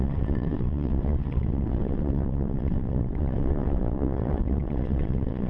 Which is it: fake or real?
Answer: fake